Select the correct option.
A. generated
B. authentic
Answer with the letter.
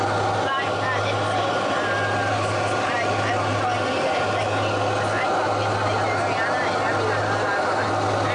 B